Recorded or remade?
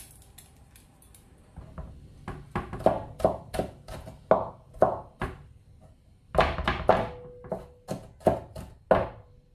recorded